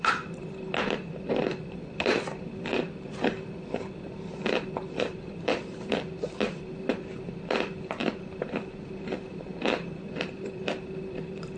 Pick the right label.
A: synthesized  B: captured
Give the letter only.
A